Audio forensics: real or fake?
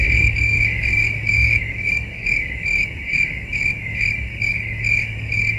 fake